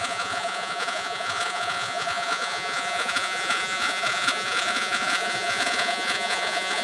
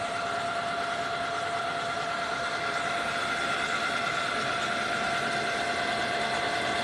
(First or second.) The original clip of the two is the second